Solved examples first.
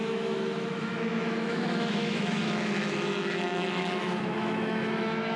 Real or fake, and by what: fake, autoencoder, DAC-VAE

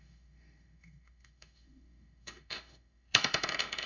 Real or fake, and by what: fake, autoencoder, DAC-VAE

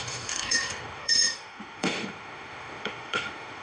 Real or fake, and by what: fake, autoencoder, DAC-VAE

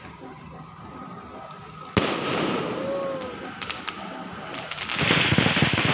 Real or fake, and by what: real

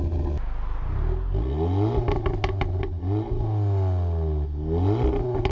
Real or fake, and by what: real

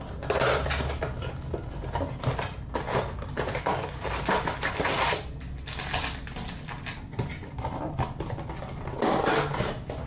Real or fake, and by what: real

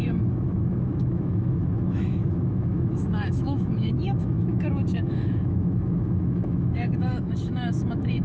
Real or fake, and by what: fake, autoencoder, DAC-VAE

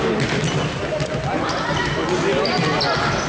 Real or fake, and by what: real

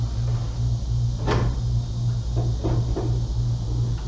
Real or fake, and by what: real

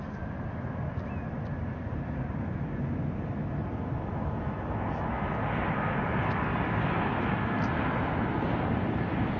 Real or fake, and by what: real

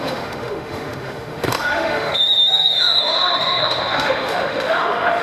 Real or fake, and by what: fake, autoencoder, DAC-VAE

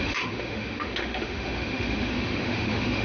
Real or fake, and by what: fake, autoencoder, DAC-VAE